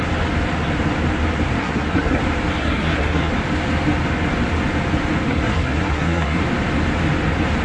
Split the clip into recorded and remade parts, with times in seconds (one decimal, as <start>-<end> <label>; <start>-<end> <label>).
0.0-1.6 recorded; 1.6-2.2 remade; 2.2-2.6 recorded; 2.6-3.3 remade; 3.3-5.3 recorded; 5.3-6.4 remade; 6.4-7.6 recorded